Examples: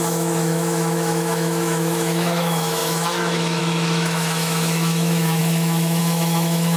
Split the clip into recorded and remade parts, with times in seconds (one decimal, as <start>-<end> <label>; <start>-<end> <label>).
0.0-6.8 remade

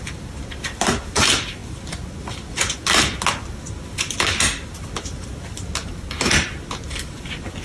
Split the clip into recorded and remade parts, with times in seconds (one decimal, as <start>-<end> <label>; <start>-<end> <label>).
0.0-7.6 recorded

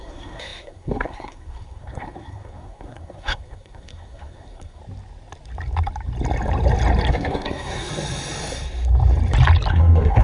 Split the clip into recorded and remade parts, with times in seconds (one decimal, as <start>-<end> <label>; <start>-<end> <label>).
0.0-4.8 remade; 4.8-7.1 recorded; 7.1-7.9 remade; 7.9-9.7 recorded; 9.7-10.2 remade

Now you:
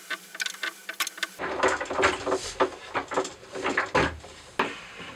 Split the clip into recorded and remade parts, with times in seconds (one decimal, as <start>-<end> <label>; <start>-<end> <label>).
0.0-5.2 recorded

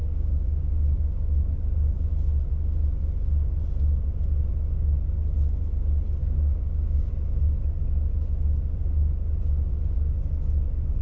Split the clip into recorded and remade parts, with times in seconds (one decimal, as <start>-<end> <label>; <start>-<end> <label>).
0.0-1.5 remade; 1.5-6.2 recorded; 6.2-7.1 remade; 7.1-11.0 recorded

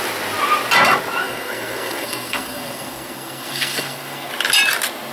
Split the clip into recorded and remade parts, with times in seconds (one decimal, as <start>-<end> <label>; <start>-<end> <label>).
0.0-1.2 recorded; 1.2-4.3 remade; 4.3-5.1 recorded

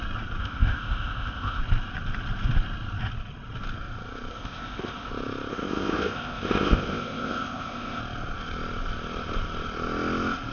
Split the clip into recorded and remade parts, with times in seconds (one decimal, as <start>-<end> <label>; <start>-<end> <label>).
0.0-0.4 recorded; 0.4-1.6 remade; 1.6-4.3 recorded; 4.3-5.1 remade; 5.1-5.5 recorded; 5.5-8.0 remade; 8.0-10.5 recorded